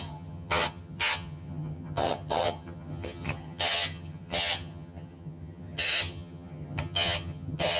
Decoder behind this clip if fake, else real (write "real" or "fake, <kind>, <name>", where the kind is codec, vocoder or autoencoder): fake, vocoder, HiFi-GAN